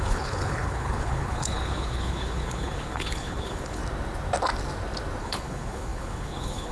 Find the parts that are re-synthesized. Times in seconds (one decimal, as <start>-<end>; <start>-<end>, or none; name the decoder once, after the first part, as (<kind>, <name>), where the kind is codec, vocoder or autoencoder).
0.0-3.8 (codec, HILCodec); 5.2-6.7